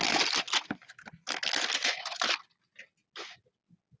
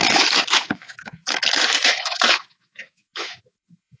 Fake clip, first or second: second